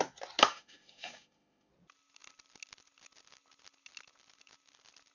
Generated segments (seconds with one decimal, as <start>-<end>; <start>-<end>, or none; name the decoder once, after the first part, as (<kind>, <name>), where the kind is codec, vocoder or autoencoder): 0.5-1.7 (autoencoder, DAC-VAE)